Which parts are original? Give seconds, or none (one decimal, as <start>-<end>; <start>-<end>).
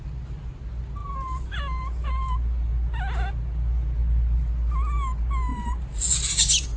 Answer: 0.0-1.0; 1.6-5.5